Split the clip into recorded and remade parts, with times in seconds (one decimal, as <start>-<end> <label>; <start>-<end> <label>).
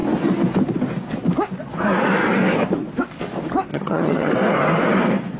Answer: 0.0-3.7 recorded; 3.7-4.3 remade; 4.3-5.4 recorded